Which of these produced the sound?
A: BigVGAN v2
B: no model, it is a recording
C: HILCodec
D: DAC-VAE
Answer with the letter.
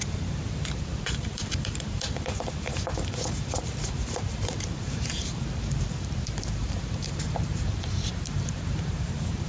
A